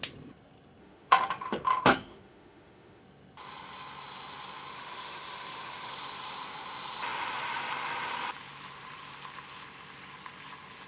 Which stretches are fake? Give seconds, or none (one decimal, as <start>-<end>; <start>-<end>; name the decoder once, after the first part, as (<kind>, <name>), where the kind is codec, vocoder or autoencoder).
0.8-3.0 (autoencoder, DAC-VAE); 4.7-5.9